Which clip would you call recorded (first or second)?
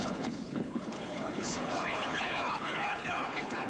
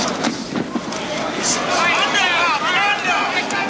second